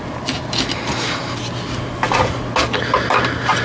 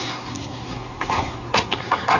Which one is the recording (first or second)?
first